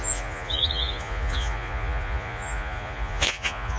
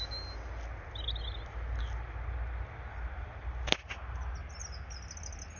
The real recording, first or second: second